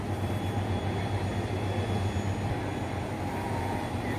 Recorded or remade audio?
recorded